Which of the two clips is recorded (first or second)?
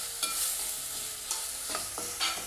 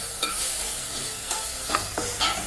first